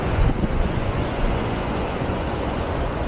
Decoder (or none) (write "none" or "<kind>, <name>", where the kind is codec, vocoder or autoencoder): vocoder, Vocos